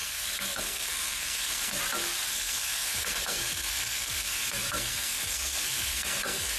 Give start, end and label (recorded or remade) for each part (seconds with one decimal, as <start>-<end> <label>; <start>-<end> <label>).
0.0-1.8 remade; 1.8-2.3 recorded; 2.3-6.6 remade